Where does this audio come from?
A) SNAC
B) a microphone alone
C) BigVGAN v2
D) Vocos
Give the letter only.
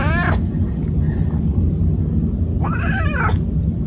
B